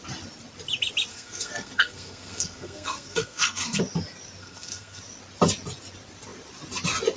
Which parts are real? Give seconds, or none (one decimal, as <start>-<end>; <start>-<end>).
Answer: 0.0-1.1; 3.8-4.4; 5.0-7.2